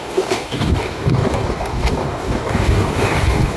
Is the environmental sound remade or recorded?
remade